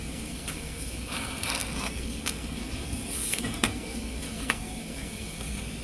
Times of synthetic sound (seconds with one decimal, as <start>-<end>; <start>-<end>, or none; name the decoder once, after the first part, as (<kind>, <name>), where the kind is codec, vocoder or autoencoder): 0.0-5.8 (codec, SNAC)